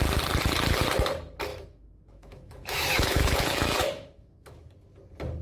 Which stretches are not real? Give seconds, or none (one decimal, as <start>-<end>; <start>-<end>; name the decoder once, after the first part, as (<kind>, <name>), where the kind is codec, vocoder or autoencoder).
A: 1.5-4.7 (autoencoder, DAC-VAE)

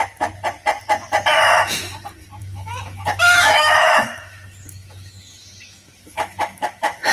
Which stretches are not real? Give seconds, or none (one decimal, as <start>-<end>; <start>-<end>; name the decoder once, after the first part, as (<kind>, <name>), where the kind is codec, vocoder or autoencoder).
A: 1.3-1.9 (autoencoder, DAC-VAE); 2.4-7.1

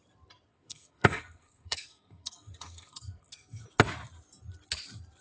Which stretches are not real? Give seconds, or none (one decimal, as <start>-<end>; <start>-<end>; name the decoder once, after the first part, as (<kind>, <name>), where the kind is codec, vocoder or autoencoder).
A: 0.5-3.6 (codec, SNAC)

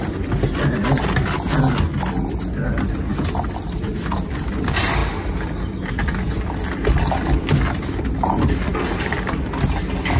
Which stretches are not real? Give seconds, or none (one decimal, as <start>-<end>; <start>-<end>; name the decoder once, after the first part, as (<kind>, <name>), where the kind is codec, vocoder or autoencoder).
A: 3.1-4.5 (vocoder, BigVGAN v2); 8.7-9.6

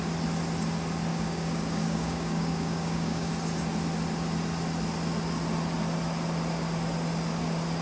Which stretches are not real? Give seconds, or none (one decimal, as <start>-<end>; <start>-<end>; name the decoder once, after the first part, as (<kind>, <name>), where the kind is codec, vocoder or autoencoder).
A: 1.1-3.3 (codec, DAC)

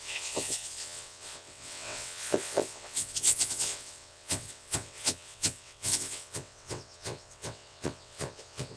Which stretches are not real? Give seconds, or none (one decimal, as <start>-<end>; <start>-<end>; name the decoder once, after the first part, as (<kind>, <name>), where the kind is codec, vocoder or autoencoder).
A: 0.0-8.8 (vocoder, WaveNeXt)

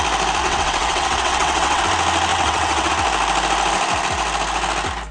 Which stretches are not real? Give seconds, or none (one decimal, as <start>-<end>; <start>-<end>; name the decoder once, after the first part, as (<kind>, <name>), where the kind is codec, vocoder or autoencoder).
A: 0.4-1.8 (vocoder, WaveNeXt); 2.3-2.9

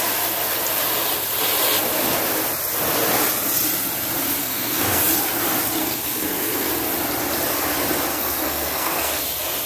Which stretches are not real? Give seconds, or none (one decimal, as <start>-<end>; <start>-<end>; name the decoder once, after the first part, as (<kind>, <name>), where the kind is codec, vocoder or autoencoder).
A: 4.4-5.0 (codec, SNAC); 5.8-6.7; 8.1-9.2